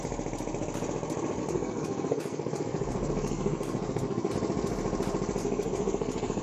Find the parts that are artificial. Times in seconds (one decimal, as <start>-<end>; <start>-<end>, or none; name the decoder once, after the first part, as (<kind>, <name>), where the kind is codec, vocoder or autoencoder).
1.4-4.3 (codec, SNAC); 5.4-6.4